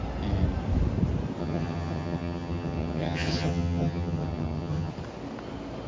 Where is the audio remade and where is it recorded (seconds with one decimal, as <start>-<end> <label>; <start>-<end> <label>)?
0.0-1.4 recorded; 1.4-4.9 remade; 4.9-5.9 recorded